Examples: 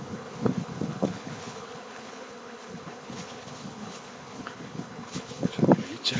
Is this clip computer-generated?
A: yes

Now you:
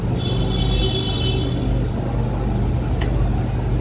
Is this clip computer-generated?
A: no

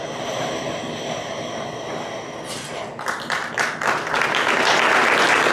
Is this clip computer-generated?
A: no